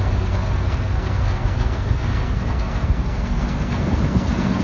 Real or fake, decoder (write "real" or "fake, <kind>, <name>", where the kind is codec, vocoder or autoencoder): fake, codec, SNAC